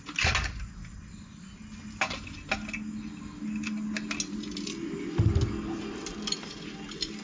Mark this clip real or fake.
real